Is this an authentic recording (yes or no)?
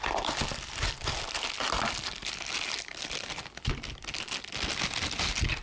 yes